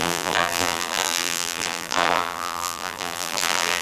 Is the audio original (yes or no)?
no